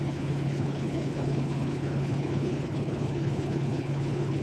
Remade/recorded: remade